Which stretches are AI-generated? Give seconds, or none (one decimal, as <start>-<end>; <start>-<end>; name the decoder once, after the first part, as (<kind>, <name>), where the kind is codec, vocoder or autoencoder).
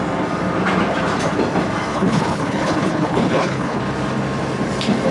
1.9-3.8 (codec, HILCodec)